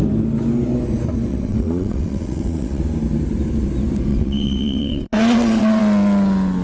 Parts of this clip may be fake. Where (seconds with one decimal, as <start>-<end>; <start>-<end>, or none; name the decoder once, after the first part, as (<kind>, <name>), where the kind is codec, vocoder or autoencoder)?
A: 1.3-2.8 (vocoder, WaveNeXt); 4.1-5.8